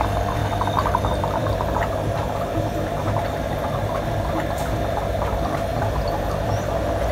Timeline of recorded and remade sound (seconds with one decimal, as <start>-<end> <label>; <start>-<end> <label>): 0.0-7.1 recorded